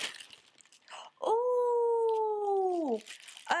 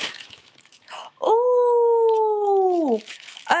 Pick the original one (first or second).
first